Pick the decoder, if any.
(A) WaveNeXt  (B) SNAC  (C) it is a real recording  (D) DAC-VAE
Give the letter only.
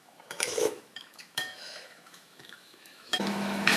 D